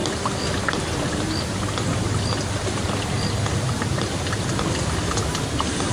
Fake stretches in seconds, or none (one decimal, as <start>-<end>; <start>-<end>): none